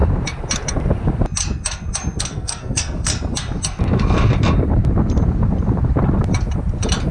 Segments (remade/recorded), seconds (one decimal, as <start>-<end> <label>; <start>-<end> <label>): 0.0-2.2 recorded; 2.2-3.1 remade; 3.1-7.1 recorded